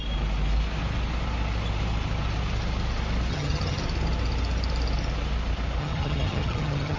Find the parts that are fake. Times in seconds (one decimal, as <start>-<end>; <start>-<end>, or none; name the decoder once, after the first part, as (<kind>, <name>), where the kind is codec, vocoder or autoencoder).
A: 3.3-3.8 (vocoder, HiFi-GAN); 5.8-7.0